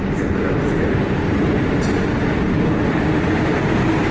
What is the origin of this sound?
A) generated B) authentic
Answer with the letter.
B